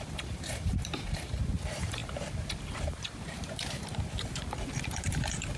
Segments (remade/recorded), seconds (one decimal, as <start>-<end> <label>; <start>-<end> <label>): 0.0-5.6 remade